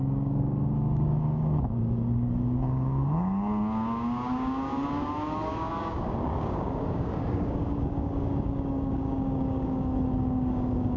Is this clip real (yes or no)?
no